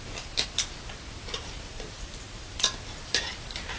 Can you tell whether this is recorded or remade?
recorded